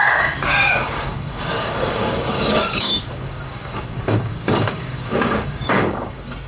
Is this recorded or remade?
remade